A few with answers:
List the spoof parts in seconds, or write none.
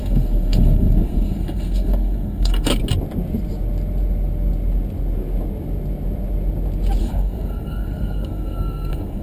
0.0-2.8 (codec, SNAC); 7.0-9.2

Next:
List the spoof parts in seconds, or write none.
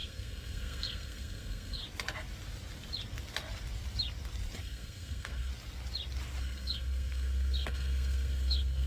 0.0-1.8 (codec, SNAC); 4.6-5.5; 6.4-8.9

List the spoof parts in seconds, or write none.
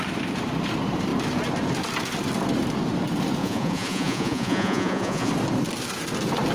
3.4-5.3 (vocoder, Vocos)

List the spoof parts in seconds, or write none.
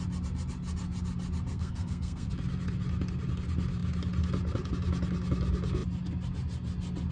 1.5-2.3 (codec, SNAC)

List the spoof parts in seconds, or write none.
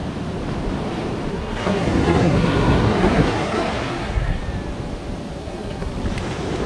1.3-4.4 (codec, SNAC); 5.4-5.9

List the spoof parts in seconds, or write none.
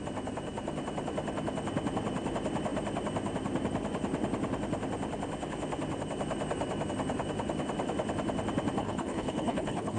8.8-10.0 (codec, HILCodec)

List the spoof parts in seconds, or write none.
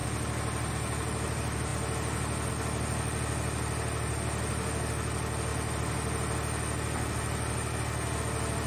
none